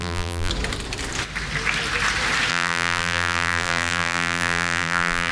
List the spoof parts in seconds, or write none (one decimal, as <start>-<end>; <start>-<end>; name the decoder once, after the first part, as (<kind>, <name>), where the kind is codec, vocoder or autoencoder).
0.0-0.5 (vocoder, BigVGAN v2); 2.5-5.3